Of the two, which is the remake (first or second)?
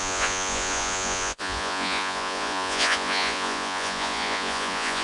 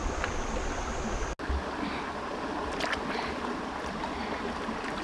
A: first